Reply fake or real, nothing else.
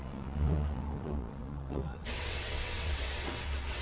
fake